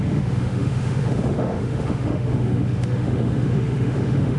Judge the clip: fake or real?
fake